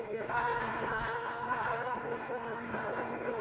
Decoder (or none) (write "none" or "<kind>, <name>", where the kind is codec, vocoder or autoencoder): codec, SNAC